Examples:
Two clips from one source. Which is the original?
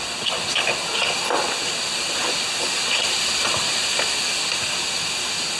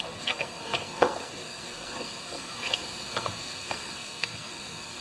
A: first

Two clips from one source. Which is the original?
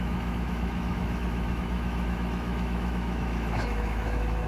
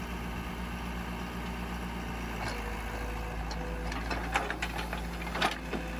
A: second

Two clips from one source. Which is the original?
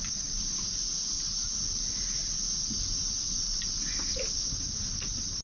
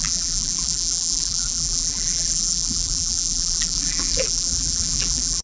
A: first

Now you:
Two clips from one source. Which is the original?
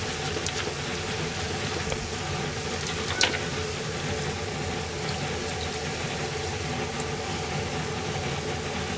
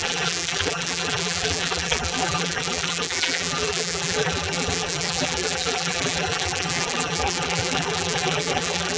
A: first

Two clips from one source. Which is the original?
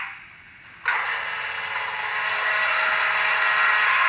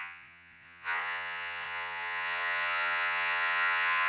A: first